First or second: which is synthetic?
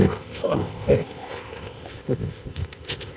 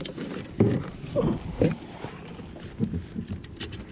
first